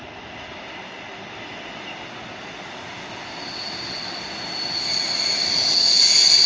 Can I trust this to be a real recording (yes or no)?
yes